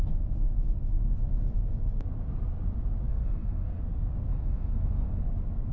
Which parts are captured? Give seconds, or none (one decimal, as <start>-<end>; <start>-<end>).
0.0-3.1; 3.8-4.3; 5.2-5.7